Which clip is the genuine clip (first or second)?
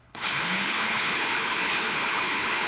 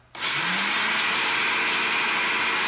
second